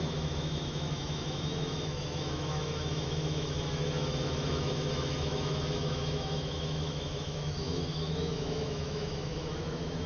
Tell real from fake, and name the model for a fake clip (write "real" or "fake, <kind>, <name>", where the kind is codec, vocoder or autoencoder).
fake, autoencoder, DAC-VAE